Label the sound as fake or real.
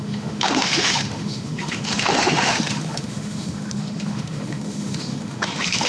fake